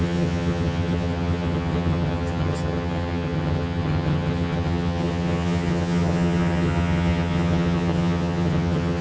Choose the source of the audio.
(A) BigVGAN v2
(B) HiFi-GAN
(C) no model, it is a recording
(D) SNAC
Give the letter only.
B